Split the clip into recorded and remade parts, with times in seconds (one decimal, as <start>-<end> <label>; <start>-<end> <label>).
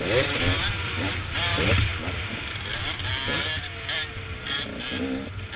0.0-5.6 recorded